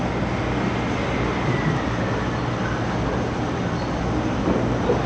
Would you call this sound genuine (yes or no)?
yes